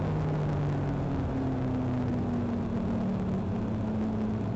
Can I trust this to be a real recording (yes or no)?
yes